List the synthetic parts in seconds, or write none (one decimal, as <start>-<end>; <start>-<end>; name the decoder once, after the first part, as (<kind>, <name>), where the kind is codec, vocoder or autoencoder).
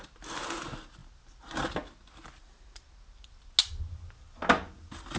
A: none